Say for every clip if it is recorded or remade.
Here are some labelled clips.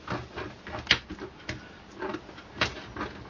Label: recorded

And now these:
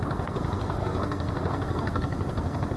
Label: remade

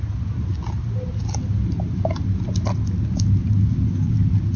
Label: recorded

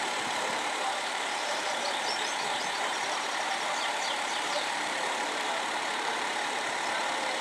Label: remade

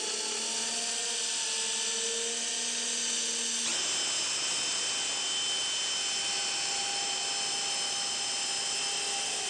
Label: recorded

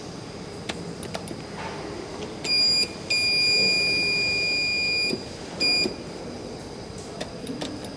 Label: recorded